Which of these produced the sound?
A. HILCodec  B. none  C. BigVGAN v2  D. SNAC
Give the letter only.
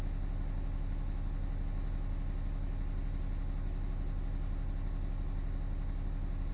B